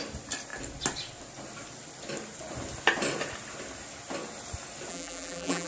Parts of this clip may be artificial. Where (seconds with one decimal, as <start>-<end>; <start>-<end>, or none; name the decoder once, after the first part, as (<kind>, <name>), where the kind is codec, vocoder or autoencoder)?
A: 4.9-5.7 (vocoder, BigVGAN v2)